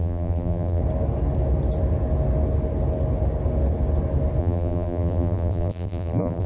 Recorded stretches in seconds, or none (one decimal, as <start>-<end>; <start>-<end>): 0.8-4.4